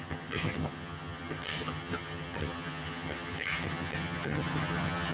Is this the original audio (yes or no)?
no